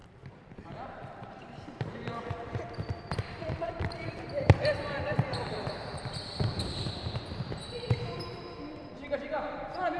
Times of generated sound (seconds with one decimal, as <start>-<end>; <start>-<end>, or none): 0.0-10.0